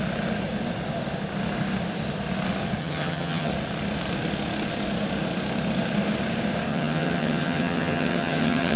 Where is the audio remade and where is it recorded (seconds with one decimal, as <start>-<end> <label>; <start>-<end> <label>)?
0.0-2.8 recorded; 2.8-3.5 remade; 3.5-6.7 recorded; 6.7-8.8 remade